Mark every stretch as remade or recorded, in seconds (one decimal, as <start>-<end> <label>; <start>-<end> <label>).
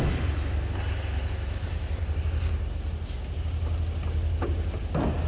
0.0-5.3 recorded